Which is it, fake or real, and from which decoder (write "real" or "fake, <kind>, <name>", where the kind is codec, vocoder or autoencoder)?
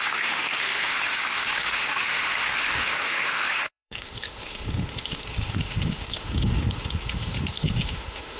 fake, autoencoder, DAC-VAE